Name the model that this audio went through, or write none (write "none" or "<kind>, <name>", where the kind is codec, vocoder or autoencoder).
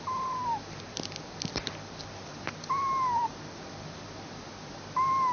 vocoder, BigVGAN v2